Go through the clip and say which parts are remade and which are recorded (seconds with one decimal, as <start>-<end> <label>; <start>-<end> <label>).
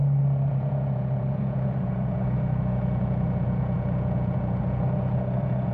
0.0-0.5 recorded; 0.5-5.7 remade